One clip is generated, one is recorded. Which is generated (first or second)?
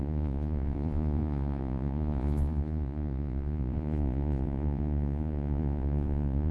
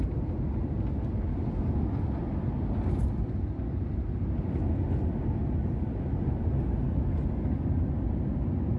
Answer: first